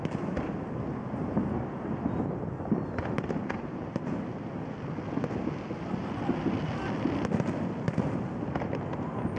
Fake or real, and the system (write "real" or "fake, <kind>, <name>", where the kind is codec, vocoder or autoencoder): real